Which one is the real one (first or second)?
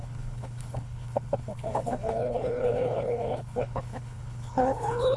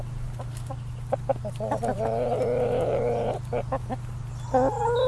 second